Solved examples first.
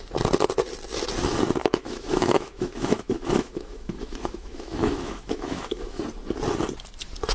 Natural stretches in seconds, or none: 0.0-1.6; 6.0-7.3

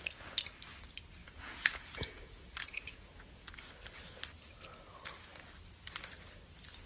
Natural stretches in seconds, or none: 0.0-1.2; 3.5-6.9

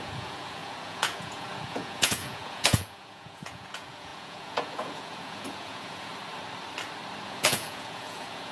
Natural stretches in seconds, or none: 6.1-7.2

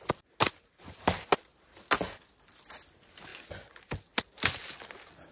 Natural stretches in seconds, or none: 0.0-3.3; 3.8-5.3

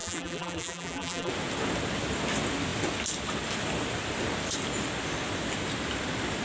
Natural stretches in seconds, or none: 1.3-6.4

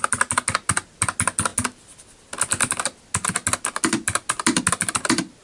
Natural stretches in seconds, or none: 0.0-5.4

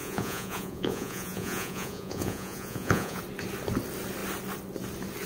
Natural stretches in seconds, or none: 3.2-5.3

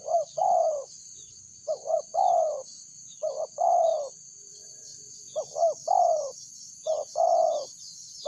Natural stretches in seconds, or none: 3.9-4.5; 4.9-6.0